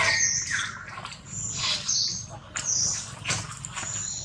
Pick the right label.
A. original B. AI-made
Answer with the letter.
A